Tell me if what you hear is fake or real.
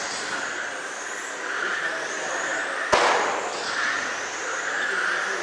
real